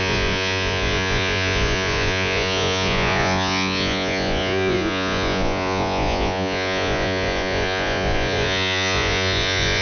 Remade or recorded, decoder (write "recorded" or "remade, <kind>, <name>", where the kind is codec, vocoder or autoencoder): remade, vocoder, Vocos